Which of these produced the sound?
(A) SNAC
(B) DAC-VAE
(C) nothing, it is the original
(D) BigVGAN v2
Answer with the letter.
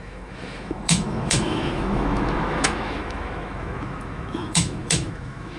B